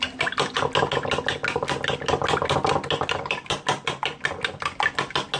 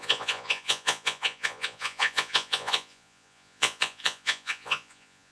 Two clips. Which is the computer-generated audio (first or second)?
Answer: second